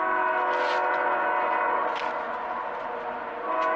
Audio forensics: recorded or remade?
recorded